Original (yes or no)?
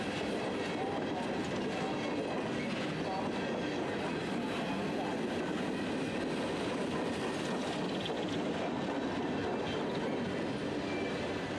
yes